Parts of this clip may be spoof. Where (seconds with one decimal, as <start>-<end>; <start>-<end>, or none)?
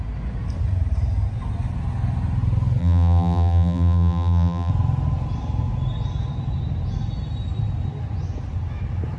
2.8-4.7